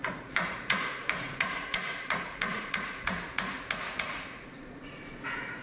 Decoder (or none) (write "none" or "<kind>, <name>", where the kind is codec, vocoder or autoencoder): vocoder, Vocos